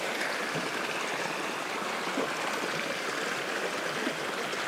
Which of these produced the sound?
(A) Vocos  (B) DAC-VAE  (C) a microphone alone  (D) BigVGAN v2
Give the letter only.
C